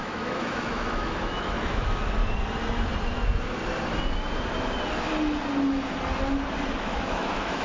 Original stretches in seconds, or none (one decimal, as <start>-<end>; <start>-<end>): 2.2-6.8